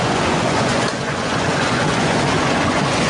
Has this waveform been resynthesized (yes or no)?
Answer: yes